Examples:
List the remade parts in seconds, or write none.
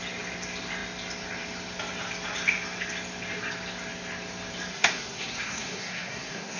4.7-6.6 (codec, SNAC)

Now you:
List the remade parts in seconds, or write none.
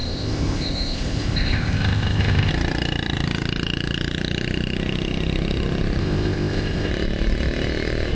0.0-2.5 (codec, ZipCodec); 6.0-6.9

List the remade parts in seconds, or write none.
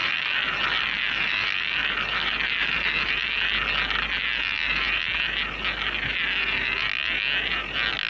1.8-3.1 (vocoder, BigVGAN v2)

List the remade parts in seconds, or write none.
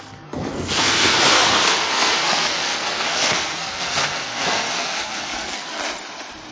0.0-5.8 (codec, SNAC)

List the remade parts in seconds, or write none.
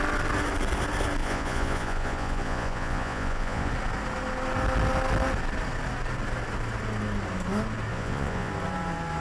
1.2-3.7 (vocoder, Vocos); 7.9-8.5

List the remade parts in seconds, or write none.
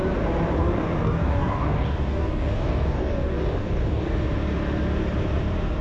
0.6-4.1 (codec, DAC)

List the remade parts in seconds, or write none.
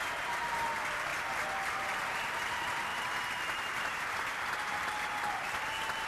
none